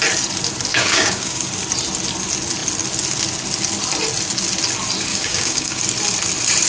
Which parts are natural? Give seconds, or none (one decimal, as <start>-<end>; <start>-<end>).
0.0-0.7; 1.5-5.1; 5.8-6.7